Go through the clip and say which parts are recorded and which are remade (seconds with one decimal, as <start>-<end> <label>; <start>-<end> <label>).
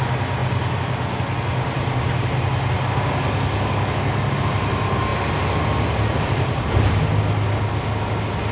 0.0-8.5 recorded